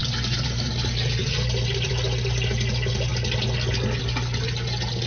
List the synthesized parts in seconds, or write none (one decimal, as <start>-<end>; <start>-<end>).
0.0-0.7; 1.2-1.9